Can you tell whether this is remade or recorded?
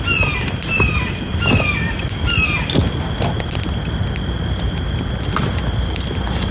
recorded